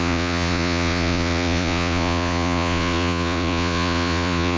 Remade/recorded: remade